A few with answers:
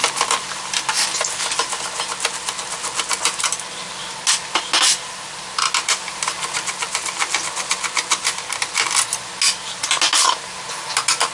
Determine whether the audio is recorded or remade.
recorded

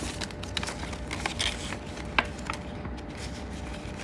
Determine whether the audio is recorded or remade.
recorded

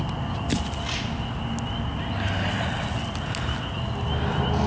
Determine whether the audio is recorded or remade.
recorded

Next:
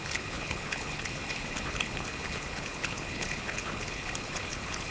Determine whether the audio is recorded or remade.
remade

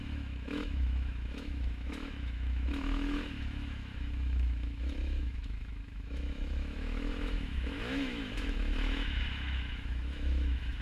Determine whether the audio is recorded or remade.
remade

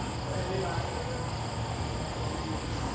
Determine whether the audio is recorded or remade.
recorded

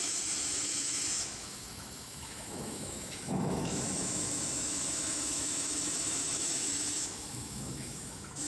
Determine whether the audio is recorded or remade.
remade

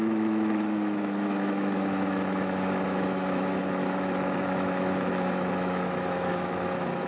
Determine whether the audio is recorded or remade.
remade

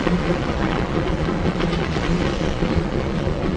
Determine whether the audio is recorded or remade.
remade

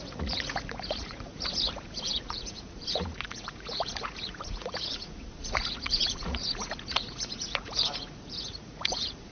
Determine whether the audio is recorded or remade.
remade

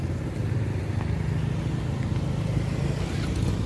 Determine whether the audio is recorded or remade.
recorded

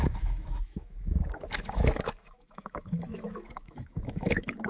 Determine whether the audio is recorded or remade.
remade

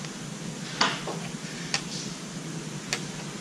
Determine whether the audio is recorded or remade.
recorded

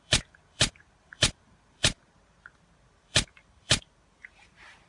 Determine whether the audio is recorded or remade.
remade